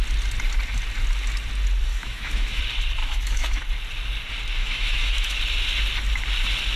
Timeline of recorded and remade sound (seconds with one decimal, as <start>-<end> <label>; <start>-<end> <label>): 0.0-1.9 recorded; 1.9-2.6 remade; 2.6-3.0 recorded; 3.0-3.6 remade; 3.6-4.6 recorded; 4.6-5.4 remade; 5.4-6.8 recorded